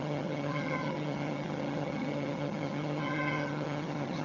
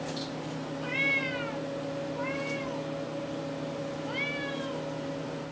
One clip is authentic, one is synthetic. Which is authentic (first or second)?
second